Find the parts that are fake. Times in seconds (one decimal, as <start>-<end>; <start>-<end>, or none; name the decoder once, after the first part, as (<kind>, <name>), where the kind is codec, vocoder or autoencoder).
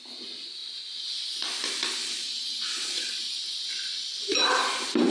none